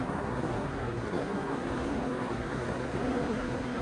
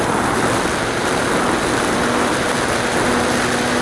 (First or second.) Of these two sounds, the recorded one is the second